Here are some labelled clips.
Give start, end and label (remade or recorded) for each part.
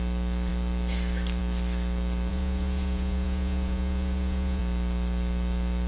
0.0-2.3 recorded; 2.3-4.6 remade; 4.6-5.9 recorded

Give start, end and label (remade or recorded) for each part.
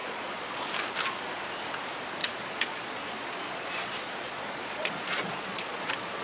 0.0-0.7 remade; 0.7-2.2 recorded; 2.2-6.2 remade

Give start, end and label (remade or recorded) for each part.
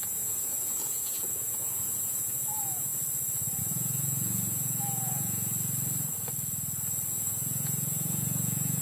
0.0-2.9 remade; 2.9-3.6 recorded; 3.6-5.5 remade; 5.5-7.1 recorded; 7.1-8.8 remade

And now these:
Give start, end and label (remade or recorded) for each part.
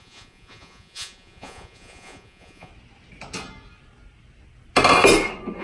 0.0-2.7 remade; 2.7-5.6 recorded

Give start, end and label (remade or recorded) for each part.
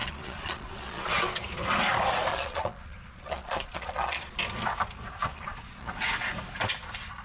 0.0-1.1 remade; 1.1-2.3 recorded; 2.3-4.4 remade; 4.4-5.3 recorded; 5.3-5.9 remade; 5.9-7.2 recorded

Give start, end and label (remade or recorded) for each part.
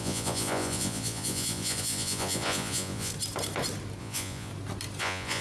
0.0-3.1 remade; 3.1-4.0 recorded; 4.0-4.5 remade; 4.5-5.0 recorded; 5.0-5.4 remade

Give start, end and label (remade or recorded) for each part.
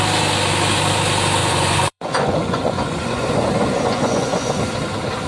0.0-1.4 recorded; 1.4-4.6 remade; 4.6-5.3 recorded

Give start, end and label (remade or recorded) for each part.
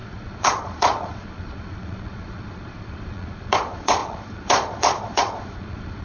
0.0-6.0 remade